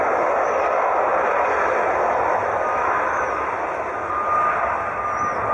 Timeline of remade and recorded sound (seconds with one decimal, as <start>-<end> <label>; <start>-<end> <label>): 0.0-2.3 recorded; 2.3-3.2 remade; 3.2-5.5 recorded